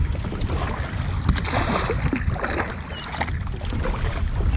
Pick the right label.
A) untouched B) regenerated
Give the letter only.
A